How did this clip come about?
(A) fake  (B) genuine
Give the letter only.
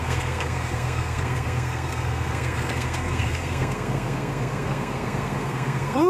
A